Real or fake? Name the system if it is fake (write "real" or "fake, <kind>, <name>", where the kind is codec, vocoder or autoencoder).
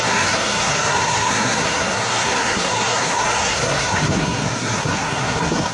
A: fake, codec, SNAC